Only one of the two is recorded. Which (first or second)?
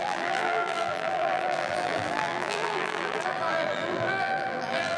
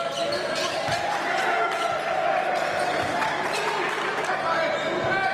second